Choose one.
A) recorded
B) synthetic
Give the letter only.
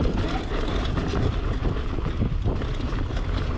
A